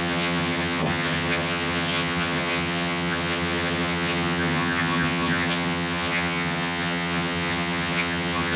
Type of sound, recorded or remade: remade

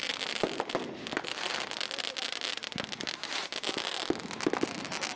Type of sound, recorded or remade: recorded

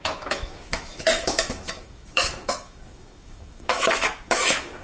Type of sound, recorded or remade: remade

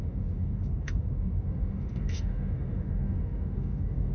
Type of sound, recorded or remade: remade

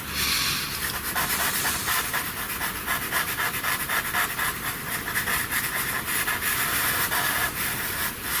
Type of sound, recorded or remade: recorded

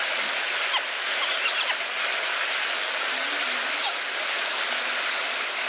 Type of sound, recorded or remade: recorded